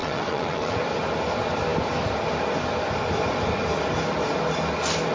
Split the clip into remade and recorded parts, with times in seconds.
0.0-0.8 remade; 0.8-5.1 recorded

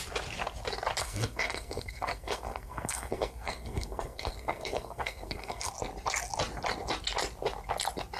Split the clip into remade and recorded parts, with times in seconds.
0.0-1.0 recorded; 1.0-5.7 remade; 5.7-8.2 recorded

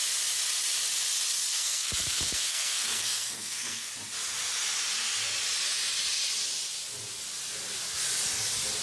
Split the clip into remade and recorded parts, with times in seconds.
0.0-1.5 recorded; 1.5-3.9 remade; 3.9-8.8 recorded

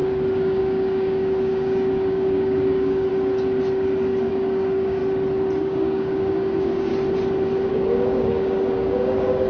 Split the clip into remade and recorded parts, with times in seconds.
0.0-3.1 remade; 3.1-4.3 recorded; 4.3-5.0 remade; 5.0-5.6 recorded; 5.6-6.9 remade; 6.9-7.7 recorded; 7.7-9.5 remade

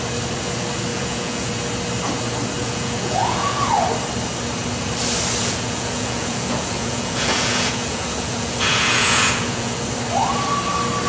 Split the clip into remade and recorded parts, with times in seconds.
0.0-0.9 recorded; 0.9-1.5 remade; 1.5-2.6 recorded; 2.6-3.7 remade; 3.7-5.4 recorded; 5.4-9.8 remade; 9.8-11.1 recorded

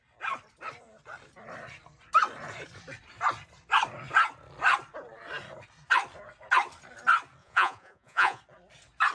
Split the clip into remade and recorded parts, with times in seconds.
0.0-7.4 recorded; 7.4-8.4 remade; 8.4-9.1 recorded

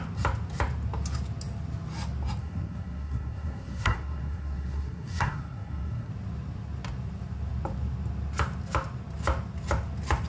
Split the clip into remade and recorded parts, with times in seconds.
0.0-2.4 recorded; 2.4-6.1 remade; 6.1-10.3 recorded